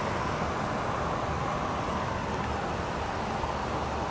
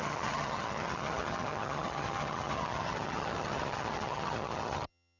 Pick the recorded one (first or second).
first